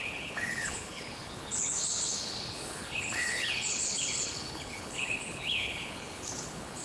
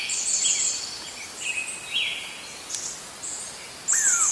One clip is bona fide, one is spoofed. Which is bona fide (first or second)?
second